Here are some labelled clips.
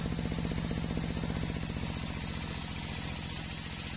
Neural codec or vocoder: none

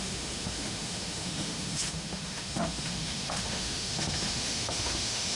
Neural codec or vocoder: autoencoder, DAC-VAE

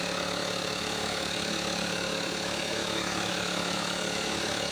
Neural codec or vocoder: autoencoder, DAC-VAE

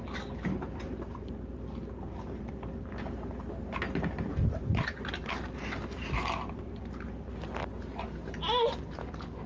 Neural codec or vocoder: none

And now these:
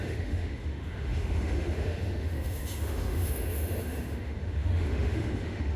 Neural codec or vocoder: autoencoder, DAC-VAE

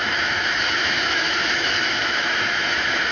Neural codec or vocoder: autoencoder, DAC-VAE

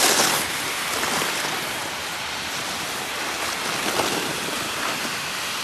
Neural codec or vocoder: none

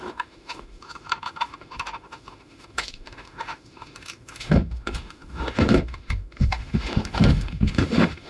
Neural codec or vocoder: autoencoder, DAC-VAE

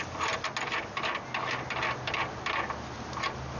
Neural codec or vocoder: none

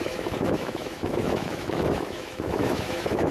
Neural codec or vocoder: autoencoder, DAC-VAE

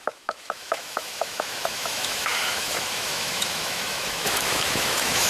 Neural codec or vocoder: autoencoder, DAC-VAE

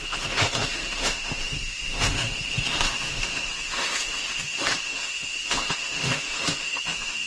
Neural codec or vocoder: autoencoder, DAC-VAE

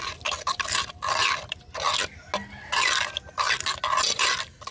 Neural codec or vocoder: none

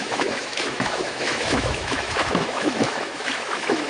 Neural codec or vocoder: autoencoder, DAC-VAE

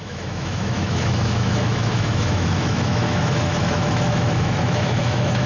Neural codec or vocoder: autoencoder, DAC-VAE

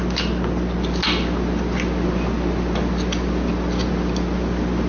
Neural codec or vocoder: none